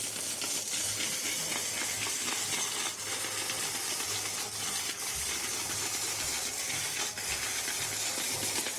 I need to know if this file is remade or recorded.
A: recorded